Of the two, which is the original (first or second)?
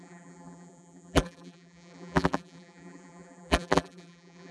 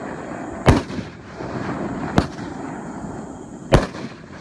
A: second